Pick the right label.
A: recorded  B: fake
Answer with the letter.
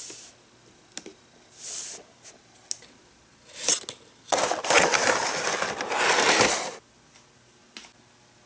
A